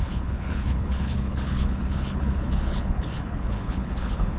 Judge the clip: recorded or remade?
remade